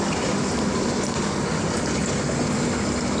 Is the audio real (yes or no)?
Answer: yes